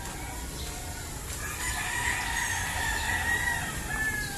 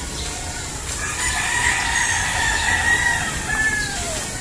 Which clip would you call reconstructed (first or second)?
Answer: second